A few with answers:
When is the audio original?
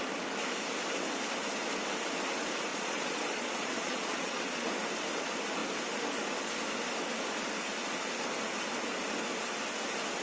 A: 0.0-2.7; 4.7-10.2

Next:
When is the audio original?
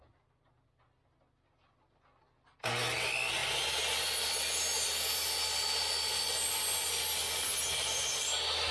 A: 0.0-8.7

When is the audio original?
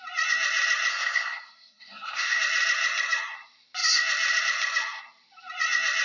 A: 0.0-0.9; 2.4-6.0